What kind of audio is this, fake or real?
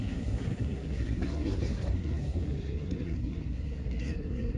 fake